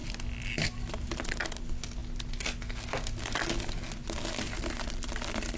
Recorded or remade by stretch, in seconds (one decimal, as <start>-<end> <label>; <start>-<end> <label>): 0.0-5.6 recorded